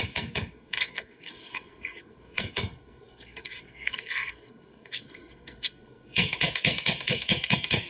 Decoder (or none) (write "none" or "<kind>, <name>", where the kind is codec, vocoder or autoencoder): codec, SNAC